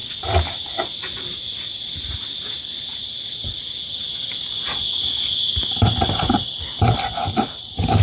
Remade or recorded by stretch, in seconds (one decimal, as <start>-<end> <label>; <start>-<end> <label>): 0.0-8.0 recorded